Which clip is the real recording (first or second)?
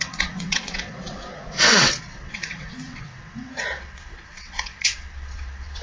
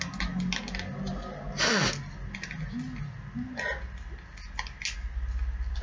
second